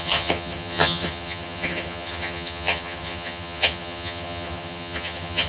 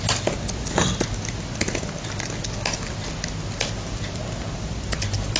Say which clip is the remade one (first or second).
first